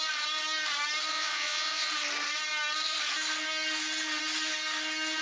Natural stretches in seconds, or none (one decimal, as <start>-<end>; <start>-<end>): 0.0-1.1; 1.9-5.2